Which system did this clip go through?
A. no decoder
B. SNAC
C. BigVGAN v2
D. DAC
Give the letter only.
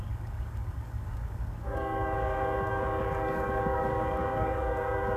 D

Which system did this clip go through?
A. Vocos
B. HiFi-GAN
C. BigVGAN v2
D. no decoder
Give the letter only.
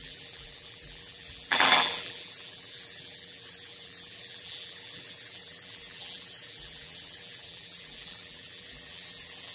C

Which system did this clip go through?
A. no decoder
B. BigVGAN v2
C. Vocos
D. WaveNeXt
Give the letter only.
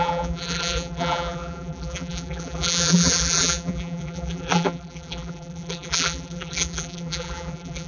B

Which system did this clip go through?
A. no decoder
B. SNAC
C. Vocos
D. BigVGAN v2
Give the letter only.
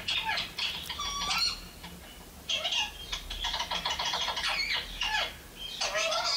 A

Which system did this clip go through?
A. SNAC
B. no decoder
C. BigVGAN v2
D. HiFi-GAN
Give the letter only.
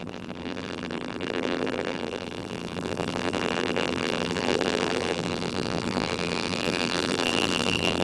C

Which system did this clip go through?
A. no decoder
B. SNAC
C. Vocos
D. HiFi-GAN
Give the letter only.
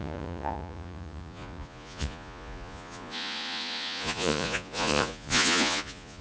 C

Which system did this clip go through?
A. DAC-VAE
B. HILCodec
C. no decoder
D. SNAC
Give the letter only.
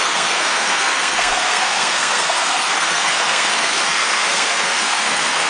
D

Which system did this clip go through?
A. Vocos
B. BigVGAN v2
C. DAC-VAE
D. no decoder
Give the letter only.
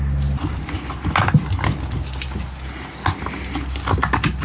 D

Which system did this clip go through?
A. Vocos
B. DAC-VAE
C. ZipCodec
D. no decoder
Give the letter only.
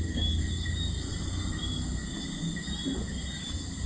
D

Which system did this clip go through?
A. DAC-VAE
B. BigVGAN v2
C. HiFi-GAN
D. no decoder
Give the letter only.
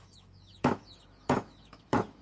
A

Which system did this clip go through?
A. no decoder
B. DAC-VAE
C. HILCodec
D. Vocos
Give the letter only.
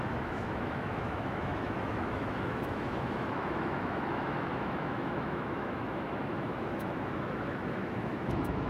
B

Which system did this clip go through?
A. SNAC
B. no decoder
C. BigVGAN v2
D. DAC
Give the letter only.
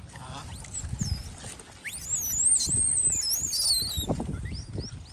B